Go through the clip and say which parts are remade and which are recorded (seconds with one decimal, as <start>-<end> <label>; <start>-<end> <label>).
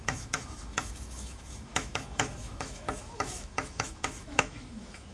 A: 0.0-5.1 remade